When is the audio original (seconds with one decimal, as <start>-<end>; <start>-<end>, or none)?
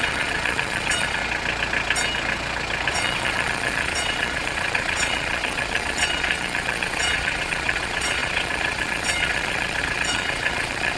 1.2-2.9